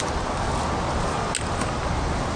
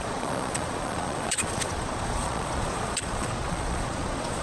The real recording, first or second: first